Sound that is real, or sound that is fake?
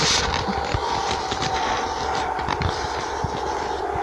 fake